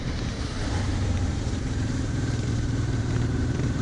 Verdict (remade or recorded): remade